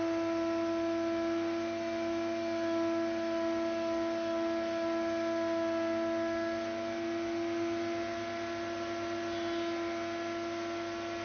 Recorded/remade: recorded